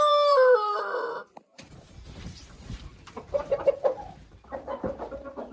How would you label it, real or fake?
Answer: fake